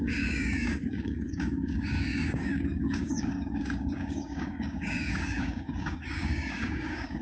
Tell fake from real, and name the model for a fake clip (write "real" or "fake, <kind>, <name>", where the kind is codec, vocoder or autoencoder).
fake, codec, DAC